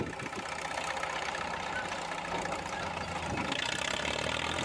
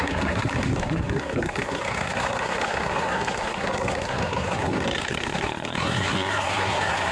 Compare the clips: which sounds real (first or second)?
first